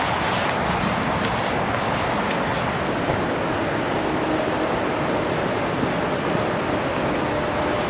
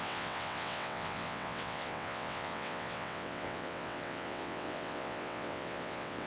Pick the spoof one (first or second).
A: second